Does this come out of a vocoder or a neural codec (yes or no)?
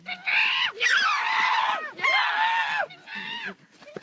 no